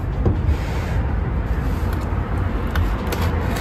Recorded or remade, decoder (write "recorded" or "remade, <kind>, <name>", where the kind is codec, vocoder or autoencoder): recorded